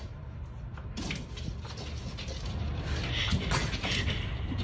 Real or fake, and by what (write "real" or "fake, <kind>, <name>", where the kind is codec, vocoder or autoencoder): real